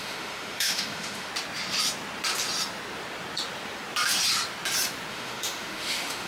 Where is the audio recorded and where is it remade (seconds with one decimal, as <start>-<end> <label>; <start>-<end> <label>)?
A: 0.0-1.3 remade; 1.3-5.1 recorded; 5.1-6.3 remade